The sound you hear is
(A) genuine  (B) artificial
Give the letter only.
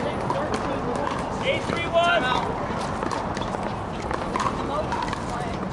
A